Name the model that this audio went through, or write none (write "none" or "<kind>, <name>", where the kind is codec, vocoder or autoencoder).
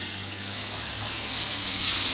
codec, SNAC